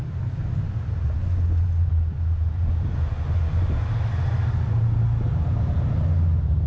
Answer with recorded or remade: recorded